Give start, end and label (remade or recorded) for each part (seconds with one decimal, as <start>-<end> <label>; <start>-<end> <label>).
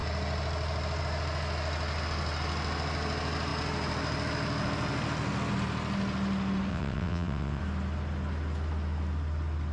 0.0-6.7 recorded; 6.7-7.6 remade; 7.6-9.7 recorded